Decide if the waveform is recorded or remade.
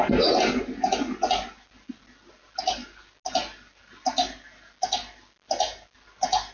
recorded